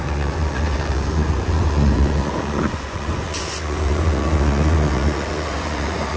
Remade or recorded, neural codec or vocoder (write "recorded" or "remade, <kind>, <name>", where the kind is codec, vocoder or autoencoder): remade, vocoder, Vocos